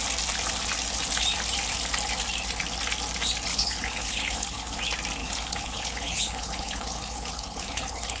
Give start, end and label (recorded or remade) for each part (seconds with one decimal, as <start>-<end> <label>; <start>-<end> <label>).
0.0-3.5 recorded; 3.5-4.8 remade; 4.8-5.2 recorded; 5.2-8.2 remade